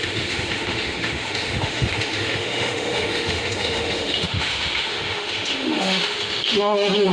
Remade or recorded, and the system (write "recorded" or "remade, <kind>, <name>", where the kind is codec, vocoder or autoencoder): remade, autoencoder, DAC-VAE